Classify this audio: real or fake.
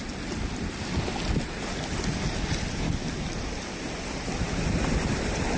real